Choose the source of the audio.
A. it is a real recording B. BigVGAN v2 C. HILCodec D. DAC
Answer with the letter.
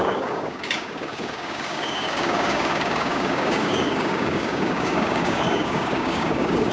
D